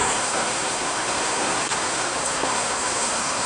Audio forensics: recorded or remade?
remade